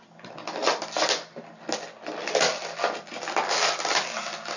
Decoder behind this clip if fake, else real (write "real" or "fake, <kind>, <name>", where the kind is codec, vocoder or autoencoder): real